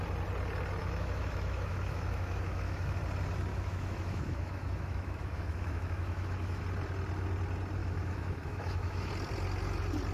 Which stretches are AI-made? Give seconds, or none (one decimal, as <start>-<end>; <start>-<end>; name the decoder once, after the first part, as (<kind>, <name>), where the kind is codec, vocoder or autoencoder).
0.8-3.0 (autoencoder, DAC-VAE); 3.5-6.6; 7.8-9.1